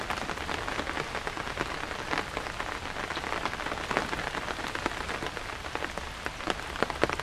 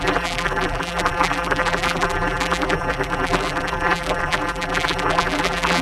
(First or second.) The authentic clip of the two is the first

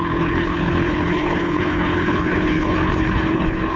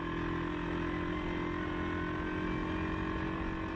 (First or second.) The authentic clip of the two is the second